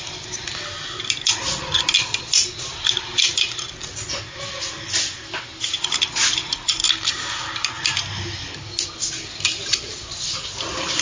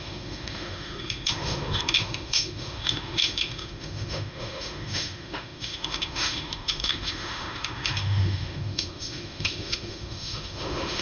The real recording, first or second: first